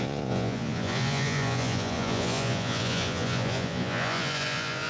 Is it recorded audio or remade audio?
remade